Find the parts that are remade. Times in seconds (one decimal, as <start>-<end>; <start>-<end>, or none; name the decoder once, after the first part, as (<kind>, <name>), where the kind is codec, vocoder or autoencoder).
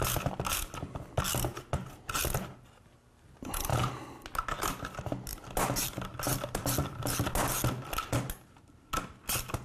none